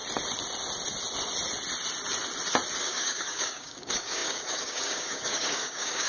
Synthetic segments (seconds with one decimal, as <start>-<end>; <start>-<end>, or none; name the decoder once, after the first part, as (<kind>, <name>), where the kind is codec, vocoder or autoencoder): 2.8-6.1 (codec, DAC)